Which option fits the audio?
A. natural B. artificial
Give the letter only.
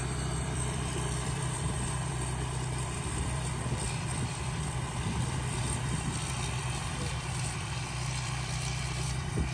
B